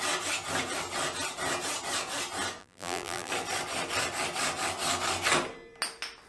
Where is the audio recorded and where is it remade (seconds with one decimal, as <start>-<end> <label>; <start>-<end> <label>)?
0.0-2.6 recorded; 2.6-3.3 remade; 3.3-6.3 recorded